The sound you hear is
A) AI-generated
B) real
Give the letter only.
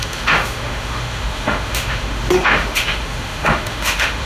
A